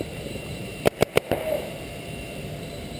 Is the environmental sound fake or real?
fake